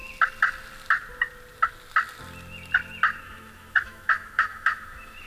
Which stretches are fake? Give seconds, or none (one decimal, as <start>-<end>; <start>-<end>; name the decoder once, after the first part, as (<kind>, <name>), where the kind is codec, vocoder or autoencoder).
3.2-5.3 (autoencoder, DAC-VAE)